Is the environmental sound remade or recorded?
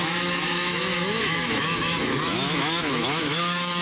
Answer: remade